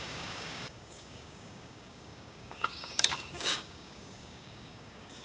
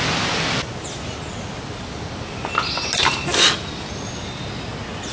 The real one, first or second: second